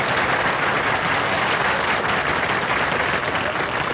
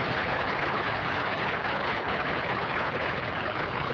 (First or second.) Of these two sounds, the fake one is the second